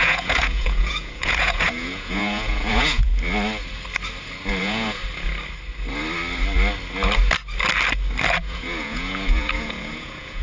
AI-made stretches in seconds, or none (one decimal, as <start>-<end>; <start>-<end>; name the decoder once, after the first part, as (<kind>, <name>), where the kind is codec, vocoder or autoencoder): 0.0-3.1 (vocoder, Vocos); 4.6-5.0; 8.4-10.4